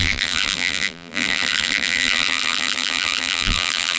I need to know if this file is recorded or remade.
remade